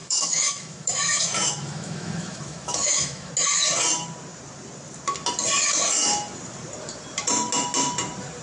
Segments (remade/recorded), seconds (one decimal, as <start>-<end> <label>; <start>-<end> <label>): 0.0-3.3 remade; 3.3-8.4 recorded

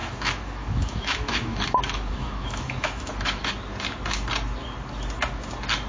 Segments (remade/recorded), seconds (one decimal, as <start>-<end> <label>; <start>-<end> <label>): 0.0-3.5 remade; 3.5-5.9 recorded

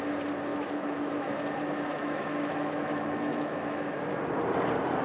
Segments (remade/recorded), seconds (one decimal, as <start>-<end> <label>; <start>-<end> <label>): 0.0-0.5 recorded; 0.5-1.4 remade; 1.4-1.9 recorded; 1.9-3.8 remade; 3.8-5.0 recorded

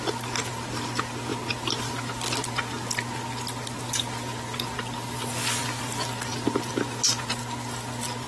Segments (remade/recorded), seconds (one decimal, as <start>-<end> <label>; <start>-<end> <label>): 0.0-8.3 recorded

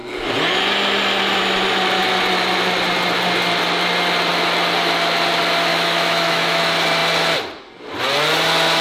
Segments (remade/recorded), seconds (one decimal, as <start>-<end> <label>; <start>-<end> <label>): 0.0-5.7 recorded; 5.7-6.6 remade; 6.6-8.8 recorded

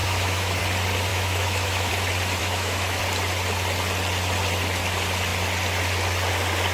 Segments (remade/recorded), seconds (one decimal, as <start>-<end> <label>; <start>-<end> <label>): 0.0-0.6 remade; 0.6-1.1 recorded; 1.1-1.9 remade; 1.9-2.4 recorded; 2.4-3.0 remade; 3.0-6.7 recorded

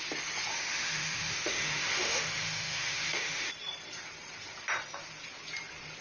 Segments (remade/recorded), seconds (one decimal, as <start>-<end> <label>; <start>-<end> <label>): 0.0-0.5 recorded; 0.5-3.5 remade; 3.5-6.0 recorded